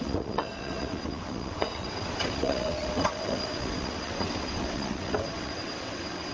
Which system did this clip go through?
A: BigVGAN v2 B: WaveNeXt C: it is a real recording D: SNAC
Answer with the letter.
B